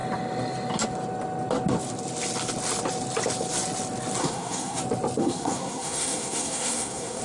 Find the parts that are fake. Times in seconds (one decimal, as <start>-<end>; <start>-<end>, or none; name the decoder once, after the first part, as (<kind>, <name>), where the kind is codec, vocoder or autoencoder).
4.2-4.8 (codec, SNAC); 5.2-7.2